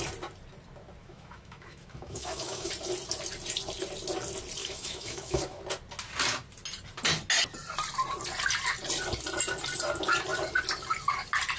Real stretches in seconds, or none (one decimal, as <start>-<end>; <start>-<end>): 0.0-1.0; 2.7-4.6; 5.6-11.6